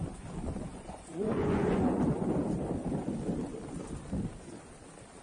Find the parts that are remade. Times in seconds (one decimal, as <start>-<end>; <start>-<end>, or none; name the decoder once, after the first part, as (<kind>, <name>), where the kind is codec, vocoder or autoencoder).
0.7-2.0 (vocoder, Vocos)